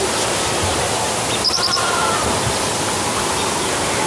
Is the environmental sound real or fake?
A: real